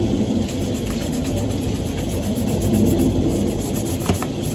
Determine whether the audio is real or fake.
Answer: real